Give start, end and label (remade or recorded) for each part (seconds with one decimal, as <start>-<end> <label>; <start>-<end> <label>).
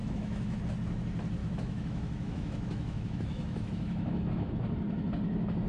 0.0-0.6 remade; 0.6-1.4 recorded; 1.4-4.5 remade; 4.5-5.7 recorded